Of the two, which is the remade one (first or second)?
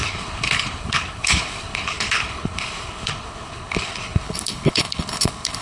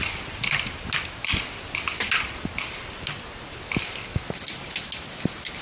first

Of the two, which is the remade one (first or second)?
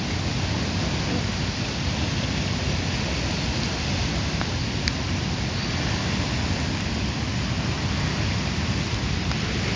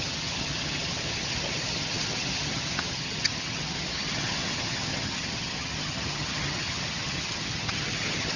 second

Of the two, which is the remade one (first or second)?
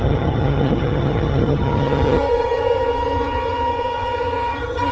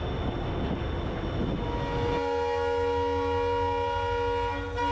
first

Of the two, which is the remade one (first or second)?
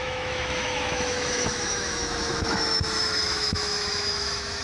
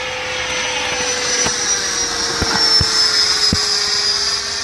first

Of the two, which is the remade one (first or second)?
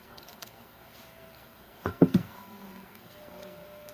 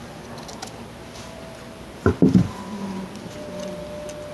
first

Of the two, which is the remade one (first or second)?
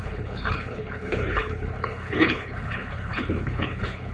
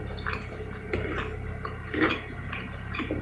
first